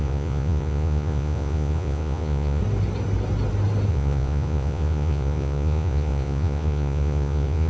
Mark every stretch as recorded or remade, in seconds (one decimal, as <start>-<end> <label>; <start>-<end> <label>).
0.0-2.6 remade; 2.6-3.9 recorded; 3.9-7.7 remade